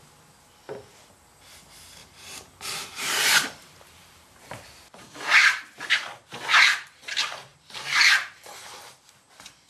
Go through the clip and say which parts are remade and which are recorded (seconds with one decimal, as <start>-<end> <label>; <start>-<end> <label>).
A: 0.0-2.0 recorded; 2.0-6.1 remade; 6.1-7.5 recorded; 7.5-8.5 remade; 8.5-9.7 recorded